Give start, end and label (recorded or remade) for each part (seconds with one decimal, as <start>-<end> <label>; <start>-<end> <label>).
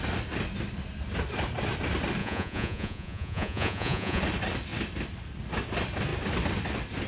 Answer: 0.0-2.2 recorded; 2.2-4.2 remade; 4.2-7.1 recorded